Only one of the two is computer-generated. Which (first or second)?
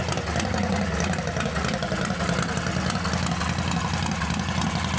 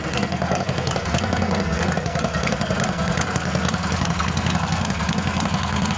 second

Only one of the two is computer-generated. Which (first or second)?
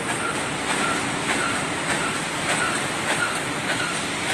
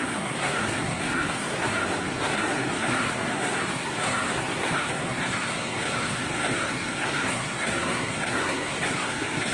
second